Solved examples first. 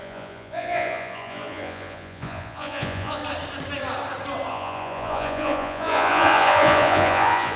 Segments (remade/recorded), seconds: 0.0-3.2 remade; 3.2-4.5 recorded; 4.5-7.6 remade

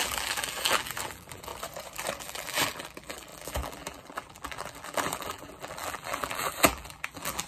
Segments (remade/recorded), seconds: 0.0-1.5 remade; 1.5-2.2 recorded; 2.2-7.5 remade

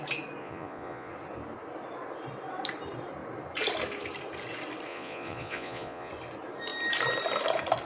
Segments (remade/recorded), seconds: 0.0-0.4 recorded; 0.4-1.1 remade; 1.1-4.9 recorded; 4.9-6.1 remade; 6.1-7.9 recorded

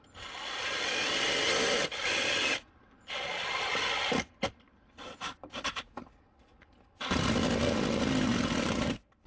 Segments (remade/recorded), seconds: 0.0-9.3 recorded

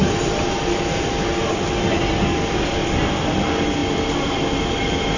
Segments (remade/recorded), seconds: 0.0-5.2 recorded

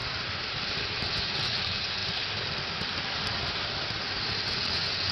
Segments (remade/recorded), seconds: 0.0-0.8 recorded; 0.8-2.0 remade; 2.0-4.3 recorded; 4.3-5.1 remade

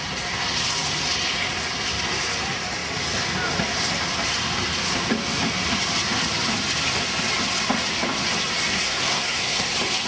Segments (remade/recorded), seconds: 0.0-8.7 recorded; 8.7-9.6 remade; 9.6-10.1 recorded